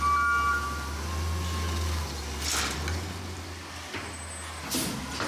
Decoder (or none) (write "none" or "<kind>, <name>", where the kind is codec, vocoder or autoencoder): none